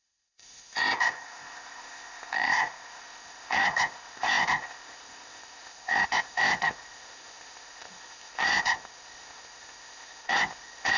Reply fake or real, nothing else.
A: fake